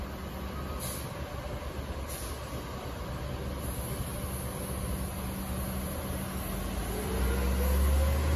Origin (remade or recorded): recorded